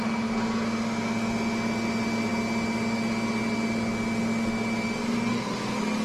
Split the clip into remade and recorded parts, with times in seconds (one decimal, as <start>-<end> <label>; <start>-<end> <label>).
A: 0.0-6.0 recorded